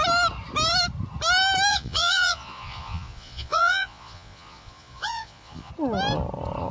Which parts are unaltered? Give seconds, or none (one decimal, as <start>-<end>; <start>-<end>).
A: 0.0-1.7; 5.7-6.7